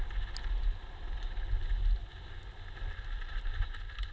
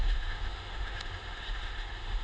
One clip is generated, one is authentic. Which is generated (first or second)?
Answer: second